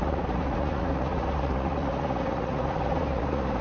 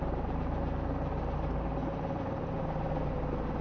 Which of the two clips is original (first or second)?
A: second